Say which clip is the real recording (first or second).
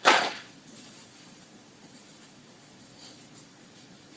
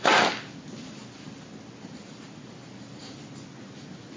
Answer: second